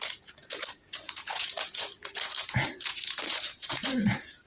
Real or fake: fake